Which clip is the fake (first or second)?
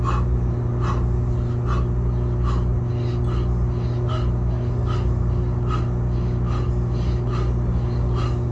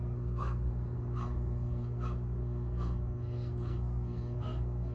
second